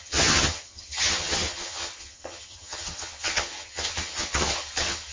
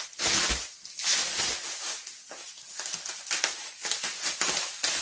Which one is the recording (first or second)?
second